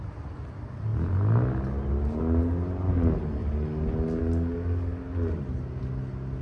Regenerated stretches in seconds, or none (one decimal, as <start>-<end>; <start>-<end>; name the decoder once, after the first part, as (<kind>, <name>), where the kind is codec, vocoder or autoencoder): none